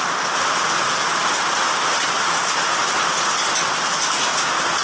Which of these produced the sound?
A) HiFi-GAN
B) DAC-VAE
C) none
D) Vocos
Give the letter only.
C